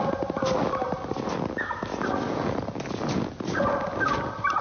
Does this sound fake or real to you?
real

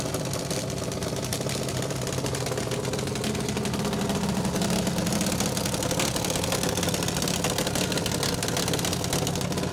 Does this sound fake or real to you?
real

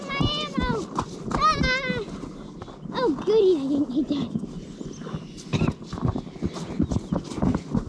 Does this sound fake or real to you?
real